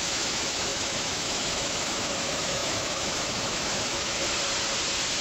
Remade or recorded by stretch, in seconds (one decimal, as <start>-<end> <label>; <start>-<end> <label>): 0.0-4.2 remade; 4.2-5.2 recorded

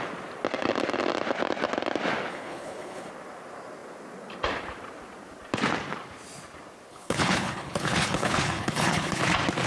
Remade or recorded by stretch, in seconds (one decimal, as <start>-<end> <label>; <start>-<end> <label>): 0.0-2.3 recorded; 2.3-3.1 remade; 3.1-6.9 recorded; 6.9-9.2 remade; 9.2-9.7 recorded

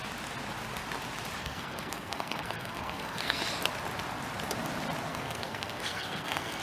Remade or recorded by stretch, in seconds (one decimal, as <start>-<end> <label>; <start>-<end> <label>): 0.0-1.4 recorded; 1.4-3.4 remade; 3.4-5.1 recorded; 5.1-6.6 remade

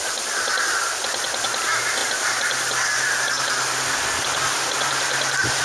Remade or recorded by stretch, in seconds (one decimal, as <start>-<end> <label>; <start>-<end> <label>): 0.0-5.6 recorded

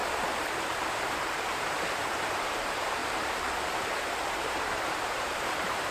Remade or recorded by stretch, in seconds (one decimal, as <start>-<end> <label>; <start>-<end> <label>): 0.0-1.1 recorded; 1.1-3.0 remade; 3.0-3.8 recorded; 3.8-5.9 remade